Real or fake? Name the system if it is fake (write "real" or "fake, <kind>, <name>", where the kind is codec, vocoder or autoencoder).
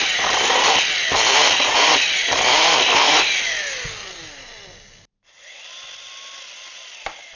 real